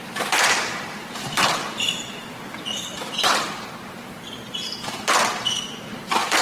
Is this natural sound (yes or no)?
no